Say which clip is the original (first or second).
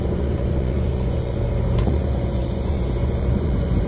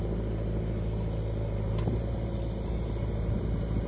second